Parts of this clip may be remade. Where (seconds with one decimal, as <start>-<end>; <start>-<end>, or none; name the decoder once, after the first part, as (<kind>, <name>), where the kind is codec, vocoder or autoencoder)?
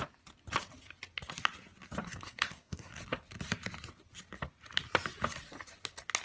2.0-3.0 (codec, SNAC)